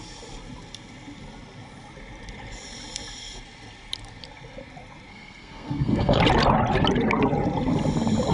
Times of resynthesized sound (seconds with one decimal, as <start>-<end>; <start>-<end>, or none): 5.1-6.2